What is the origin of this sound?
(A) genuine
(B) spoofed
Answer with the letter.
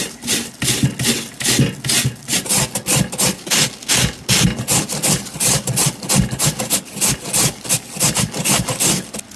A